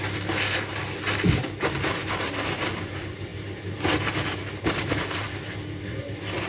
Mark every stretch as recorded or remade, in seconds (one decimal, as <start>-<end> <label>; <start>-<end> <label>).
0.0-6.5 recorded